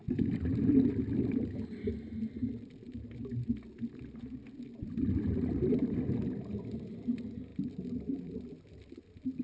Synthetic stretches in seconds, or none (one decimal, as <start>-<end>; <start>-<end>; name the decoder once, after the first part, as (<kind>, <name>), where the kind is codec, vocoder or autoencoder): none